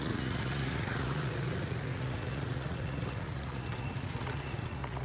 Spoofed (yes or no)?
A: yes